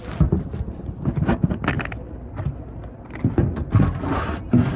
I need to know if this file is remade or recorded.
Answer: recorded